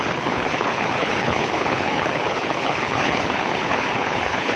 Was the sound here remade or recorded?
remade